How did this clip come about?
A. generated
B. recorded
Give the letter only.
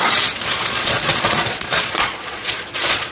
A